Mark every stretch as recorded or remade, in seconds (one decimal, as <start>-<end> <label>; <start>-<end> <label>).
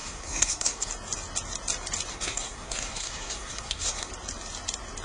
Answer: 0.0-0.9 remade; 0.9-2.1 recorded; 2.1-4.1 remade; 4.1-5.0 recorded